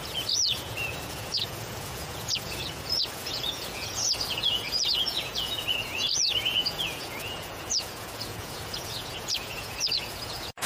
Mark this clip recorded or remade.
remade